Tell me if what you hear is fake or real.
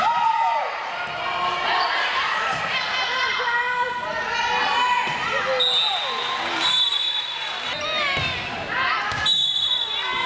real